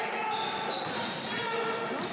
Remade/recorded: recorded